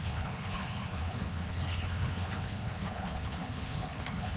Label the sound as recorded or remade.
remade